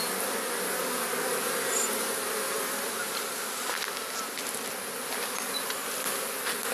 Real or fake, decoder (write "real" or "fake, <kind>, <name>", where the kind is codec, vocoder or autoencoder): real